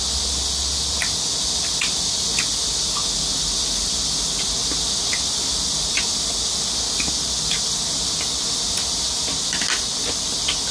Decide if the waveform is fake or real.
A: real